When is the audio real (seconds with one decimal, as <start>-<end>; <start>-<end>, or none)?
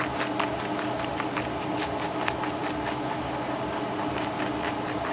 0.0-5.1